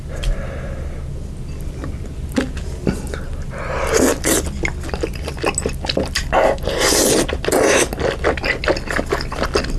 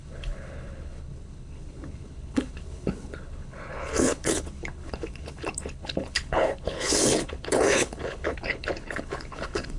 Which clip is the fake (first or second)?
second